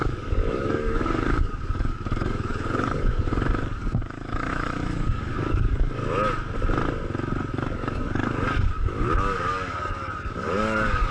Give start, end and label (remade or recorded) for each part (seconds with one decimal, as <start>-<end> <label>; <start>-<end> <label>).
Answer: 0.0-6.0 remade; 6.0-7.5 recorded; 7.5-11.1 remade